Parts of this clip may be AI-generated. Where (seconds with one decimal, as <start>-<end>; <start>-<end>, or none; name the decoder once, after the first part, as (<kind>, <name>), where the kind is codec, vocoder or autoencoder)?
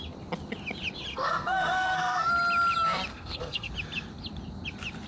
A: 1.1-2.3 (codec, SNAC); 3.1-3.7